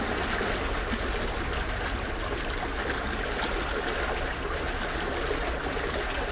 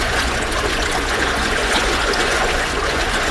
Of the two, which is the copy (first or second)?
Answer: second